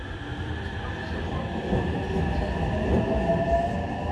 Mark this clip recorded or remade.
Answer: recorded